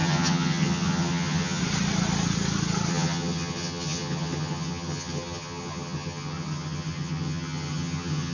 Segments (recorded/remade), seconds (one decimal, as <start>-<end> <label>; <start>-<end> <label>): 0.0-1.6 remade; 1.6-2.9 recorded; 2.9-8.3 remade